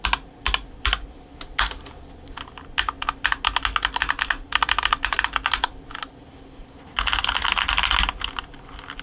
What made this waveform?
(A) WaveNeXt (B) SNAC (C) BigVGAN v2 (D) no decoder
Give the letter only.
D